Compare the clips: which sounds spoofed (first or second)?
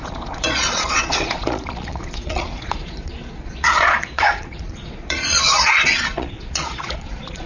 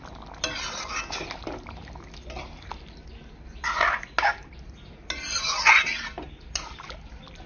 first